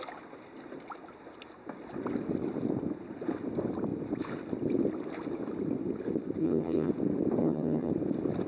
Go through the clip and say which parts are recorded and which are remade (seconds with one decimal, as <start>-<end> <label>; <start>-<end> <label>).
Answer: 0.0-6.4 recorded; 6.4-6.9 remade; 6.9-7.4 recorded; 7.4-7.9 remade; 7.9-8.5 recorded